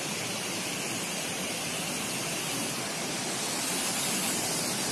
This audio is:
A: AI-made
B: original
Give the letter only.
B